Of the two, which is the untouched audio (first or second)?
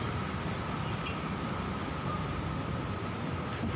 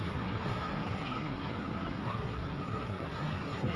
first